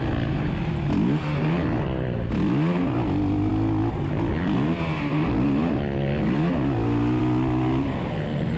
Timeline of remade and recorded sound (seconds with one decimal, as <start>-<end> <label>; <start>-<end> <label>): 0.0-8.6 recorded

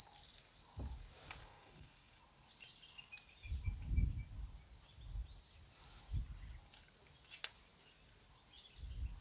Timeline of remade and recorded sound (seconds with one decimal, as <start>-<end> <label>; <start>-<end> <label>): 0.0-1.4 recorded; 1.4-2.2 remade; 2.2-9.2 recorded

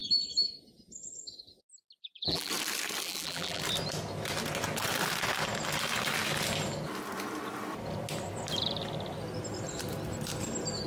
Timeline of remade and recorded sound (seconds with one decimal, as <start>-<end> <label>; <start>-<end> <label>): 0.0-2.0 recorded; 2.0-2.5 remade; 2.5-3.0 recorded; 3.0-3.6 remade; 3.6-10.9 recorded

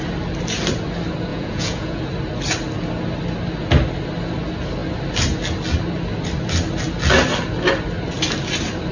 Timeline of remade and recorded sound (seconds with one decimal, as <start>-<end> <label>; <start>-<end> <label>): 0.0-1.3 recorded; 1.3-2.0 remade; 2.0-8.9 recorded

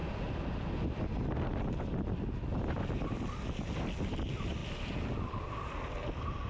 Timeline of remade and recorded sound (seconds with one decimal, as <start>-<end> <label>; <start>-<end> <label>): 0.0-6.5 recorded

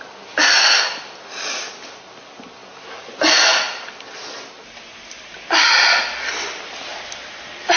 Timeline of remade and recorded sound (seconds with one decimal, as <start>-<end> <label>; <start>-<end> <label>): 0.0-7.8 recorded